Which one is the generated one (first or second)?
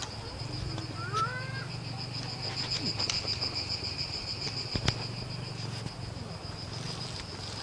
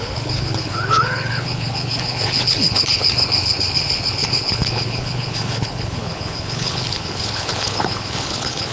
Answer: second